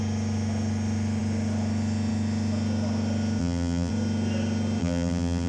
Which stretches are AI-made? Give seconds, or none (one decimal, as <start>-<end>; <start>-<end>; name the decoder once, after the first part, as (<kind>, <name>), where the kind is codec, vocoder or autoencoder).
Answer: 3.4-3.9 (vocoder, BigVGAN v2); 4.8-5.5